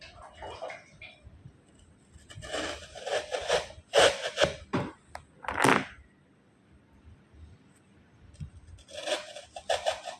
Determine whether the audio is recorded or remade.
recorded